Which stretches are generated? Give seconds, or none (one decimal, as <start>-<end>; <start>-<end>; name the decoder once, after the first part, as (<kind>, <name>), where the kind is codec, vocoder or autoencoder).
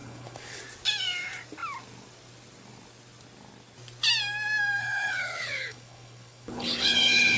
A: 0.0-0.6 (codec, HILCodec); 4.8-7.4